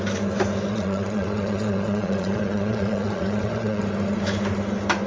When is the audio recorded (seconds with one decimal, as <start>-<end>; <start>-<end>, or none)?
0.0-0.7; 3.8-5.1